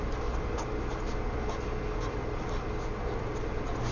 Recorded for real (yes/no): yes